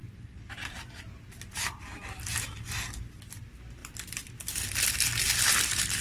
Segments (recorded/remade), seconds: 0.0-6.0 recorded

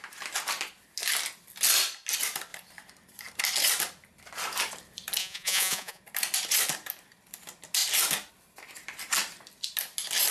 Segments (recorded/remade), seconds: 0.0-5.2 recorded; 5.2-6.0 remade; 6.0-10.3 recorded